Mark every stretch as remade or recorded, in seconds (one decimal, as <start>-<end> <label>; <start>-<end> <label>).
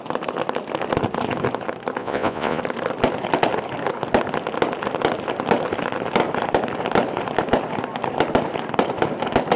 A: 0.0-2.0 recorded; 2.0-2.6 remade; 2.6-9.6 recorded